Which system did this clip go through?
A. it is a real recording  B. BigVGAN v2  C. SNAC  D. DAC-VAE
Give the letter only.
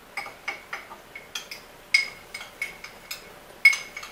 A